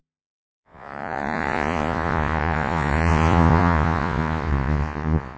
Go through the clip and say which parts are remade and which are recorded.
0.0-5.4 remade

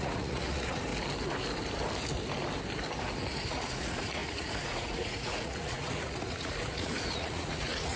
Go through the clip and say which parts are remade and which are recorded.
0.0-0.9 remade; 0.9-3.5 recorded; 3.5-8.0 remade

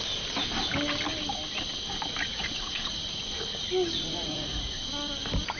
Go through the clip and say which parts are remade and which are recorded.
0.0-2.3 recorded; 2.3-3.0 remade; 3.0-4.2 recorded; 4.2-4.8 remade; 4.8-5.6 recorded